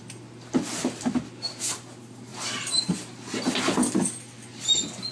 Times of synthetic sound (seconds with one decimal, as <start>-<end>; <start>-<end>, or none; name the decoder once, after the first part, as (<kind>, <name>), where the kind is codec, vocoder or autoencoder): none